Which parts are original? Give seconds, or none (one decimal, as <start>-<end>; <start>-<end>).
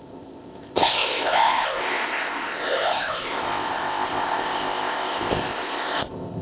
none